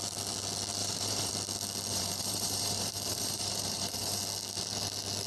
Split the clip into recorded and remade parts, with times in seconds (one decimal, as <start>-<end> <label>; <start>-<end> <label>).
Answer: 0.0-0.8 recorded; 0.8-1.3 remade; 1.3-1.9 recorded; 1.9-4.2 remade; 4.2-5.3 recorded